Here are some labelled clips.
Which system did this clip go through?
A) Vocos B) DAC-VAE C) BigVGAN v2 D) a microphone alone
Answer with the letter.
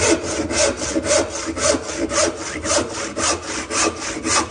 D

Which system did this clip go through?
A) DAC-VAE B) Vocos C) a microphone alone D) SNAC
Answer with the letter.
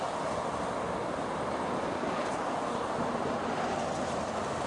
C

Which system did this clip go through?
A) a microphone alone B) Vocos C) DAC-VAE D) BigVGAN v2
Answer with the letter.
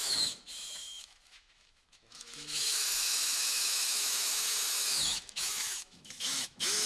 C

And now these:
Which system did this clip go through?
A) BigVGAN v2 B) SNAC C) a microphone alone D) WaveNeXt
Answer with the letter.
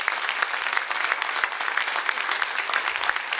C